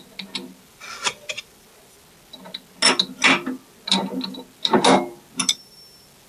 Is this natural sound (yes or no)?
yes